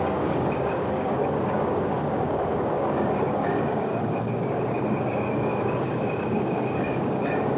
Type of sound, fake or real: fake